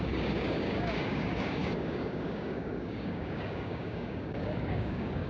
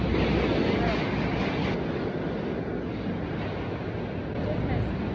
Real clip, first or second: second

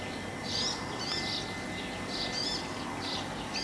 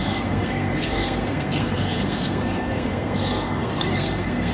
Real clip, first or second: first